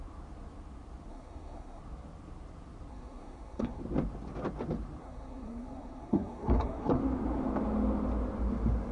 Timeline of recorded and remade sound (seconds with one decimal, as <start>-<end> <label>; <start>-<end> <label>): 0.0-1.1 recorded; 1.1-1.8 remade; 1.8-2.9 recorded; 2.9-3.8 remade; 3.8-5.0 recorded; 5.0-7.0 remade; 7.0-8.9 recorded